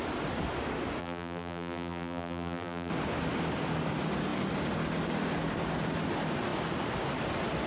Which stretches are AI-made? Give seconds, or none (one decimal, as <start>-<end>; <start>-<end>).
1.0-2.9